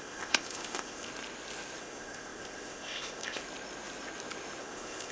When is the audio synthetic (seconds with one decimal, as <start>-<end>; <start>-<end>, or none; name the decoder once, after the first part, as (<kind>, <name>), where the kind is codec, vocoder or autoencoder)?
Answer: 0.0-1.1 (codec, ZipCodec); 1.8-3.4; 4.6-5.1

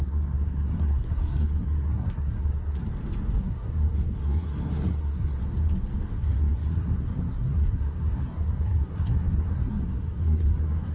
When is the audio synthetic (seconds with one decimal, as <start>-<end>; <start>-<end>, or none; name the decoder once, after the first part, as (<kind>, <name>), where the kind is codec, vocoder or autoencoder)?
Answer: 0.0-2.8 (codec, SNAC); 3.4-5.4; 6.1-10.9

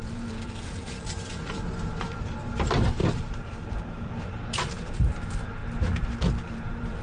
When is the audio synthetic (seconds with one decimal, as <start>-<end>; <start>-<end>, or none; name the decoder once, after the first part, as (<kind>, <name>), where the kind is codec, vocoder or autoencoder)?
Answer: 0.0-5.6 (vocoder, BigVGAN v2); 6.3-7.0

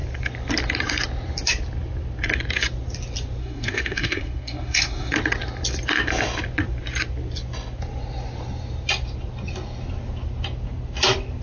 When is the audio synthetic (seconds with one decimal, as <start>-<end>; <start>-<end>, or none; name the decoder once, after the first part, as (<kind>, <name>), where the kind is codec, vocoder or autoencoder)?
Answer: 3.4-5.1 (codec, SNAC)